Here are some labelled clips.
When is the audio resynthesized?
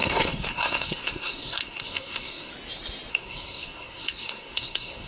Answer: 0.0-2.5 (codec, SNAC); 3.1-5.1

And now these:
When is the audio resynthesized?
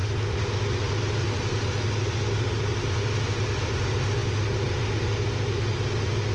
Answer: none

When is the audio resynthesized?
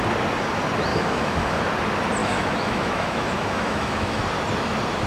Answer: 0.9-1.6 (autoencoder, DAC-VAE); 2.2-4.2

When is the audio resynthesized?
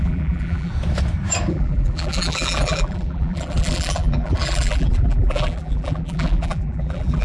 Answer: 0.0-0.7 (vocoder, BigVGAN v2); 1.5-7.2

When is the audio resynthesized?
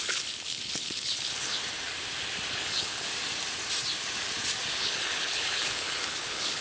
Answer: 0.0-1.6 (codec, HILCodec); 2.5-3.1; 4.8-6.6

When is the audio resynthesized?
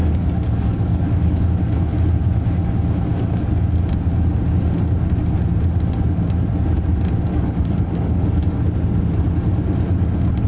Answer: 0.0-1.6 (codec, DAC); 3.1-3.6; 7.3-8.6